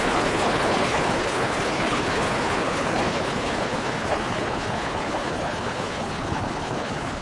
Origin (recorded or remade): remade